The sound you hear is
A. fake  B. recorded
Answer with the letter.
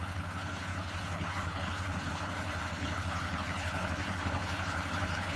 A